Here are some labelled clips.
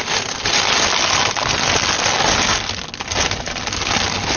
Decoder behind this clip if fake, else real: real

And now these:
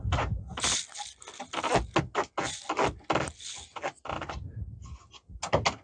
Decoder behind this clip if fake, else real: real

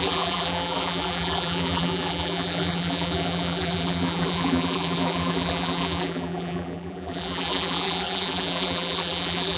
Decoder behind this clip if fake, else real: fake, vocoder, BigVGAN v2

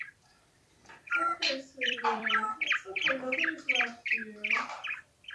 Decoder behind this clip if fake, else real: fake, vocoder, BigVGAN v2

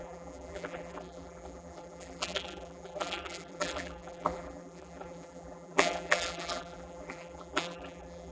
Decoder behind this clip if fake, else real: fake, vocoder, BigVGAN v2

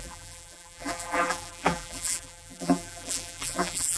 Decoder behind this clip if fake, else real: fake, vocoder, BigVGAN v2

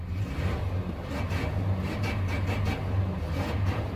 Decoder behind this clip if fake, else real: real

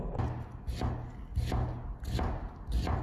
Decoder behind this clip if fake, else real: real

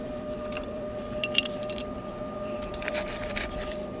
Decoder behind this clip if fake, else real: fake, vocoder, BigVGAN v2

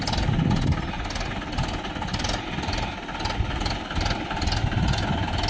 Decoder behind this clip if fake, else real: real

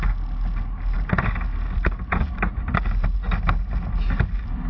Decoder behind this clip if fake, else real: real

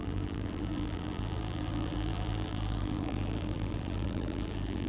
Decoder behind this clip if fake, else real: fake, vocoder, BigVGAN v2